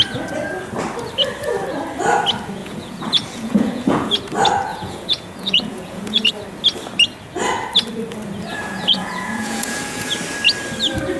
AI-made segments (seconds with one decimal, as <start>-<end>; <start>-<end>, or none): 2.6-4.2; 4.7-6.3; 8.5-10.1